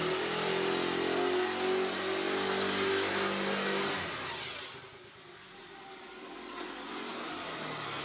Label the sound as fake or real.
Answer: real